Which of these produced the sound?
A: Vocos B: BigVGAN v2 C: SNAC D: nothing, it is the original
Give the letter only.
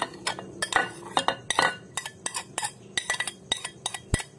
D